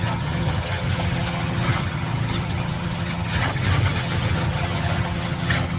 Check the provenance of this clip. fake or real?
fake